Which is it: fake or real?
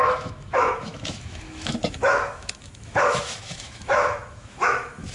fake